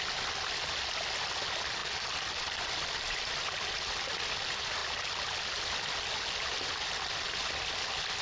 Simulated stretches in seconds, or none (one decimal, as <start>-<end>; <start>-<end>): none